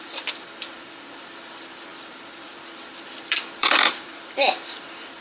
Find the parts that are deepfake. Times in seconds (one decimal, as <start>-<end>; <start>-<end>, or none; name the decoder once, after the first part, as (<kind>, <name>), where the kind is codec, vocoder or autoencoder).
0.0-5.2 (vocoder, BigVGAN v2)